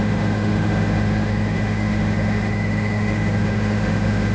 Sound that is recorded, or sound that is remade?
remade